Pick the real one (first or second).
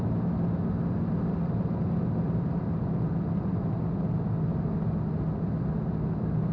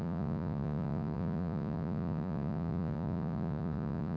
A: first